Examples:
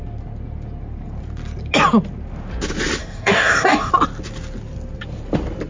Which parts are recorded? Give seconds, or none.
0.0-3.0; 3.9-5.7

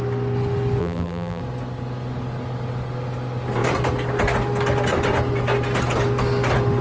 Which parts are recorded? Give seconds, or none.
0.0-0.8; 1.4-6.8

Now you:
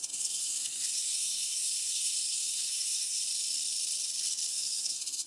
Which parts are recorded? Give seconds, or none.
3.2-4.5

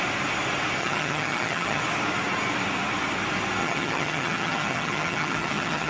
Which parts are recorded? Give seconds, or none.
0.0-0.8; 1.8-3.6